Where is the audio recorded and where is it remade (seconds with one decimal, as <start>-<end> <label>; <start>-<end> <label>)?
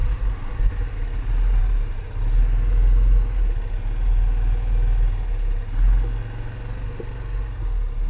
0.0-0.7 remade; 0.7-1.6 recorded; 1.6-2.2 remade; 2.2-8.1 recorded